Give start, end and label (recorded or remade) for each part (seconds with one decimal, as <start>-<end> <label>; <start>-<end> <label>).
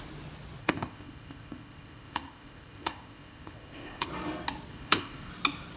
0.0-0.6 recorded; 0.6-4.1 remade; 4.1-4.7 recorded; 4.7-5.3 remade; 5.3-5.8 recorded